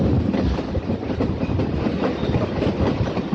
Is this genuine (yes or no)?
yes